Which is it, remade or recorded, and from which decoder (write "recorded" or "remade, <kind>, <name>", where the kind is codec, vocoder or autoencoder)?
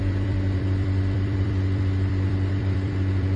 remade, vocoder, BigVGAN v2